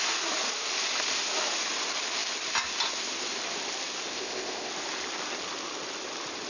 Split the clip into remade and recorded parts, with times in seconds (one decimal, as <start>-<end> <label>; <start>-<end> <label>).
0.0-4.1 recorded; 4.1-4.7 remade; 4.7-6.5 recorded